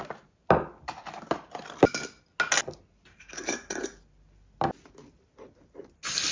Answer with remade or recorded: recorded